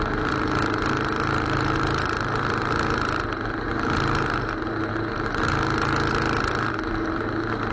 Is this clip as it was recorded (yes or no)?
yes